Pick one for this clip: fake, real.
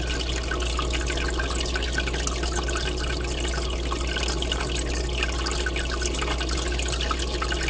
real